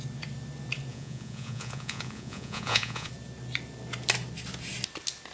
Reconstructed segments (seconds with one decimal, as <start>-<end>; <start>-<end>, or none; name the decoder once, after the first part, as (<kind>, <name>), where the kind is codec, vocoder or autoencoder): 0.9-3.1 (vocoder, Vocos)